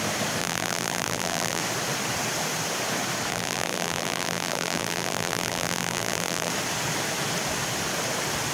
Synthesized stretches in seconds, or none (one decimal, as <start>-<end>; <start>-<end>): 0.4-1.6; 3.3-6.5